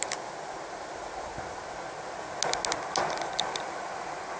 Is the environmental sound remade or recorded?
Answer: recorded